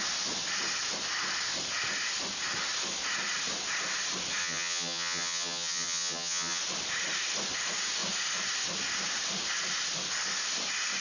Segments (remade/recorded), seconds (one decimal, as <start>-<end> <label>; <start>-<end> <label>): 0.0-4.4 recorded; 4.4-6.6 remade; 6.6-11.0 recorded